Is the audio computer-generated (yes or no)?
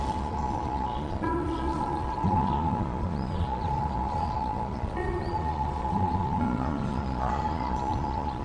yes